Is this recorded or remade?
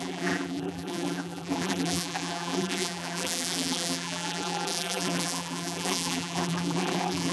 remade